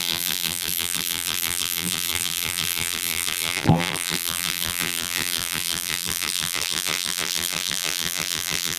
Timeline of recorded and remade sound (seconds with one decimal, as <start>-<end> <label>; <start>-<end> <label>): 0.0-8.8 remade